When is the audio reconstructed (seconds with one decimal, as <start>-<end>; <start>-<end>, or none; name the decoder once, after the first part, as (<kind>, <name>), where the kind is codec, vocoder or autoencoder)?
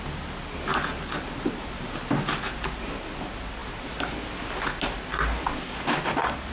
none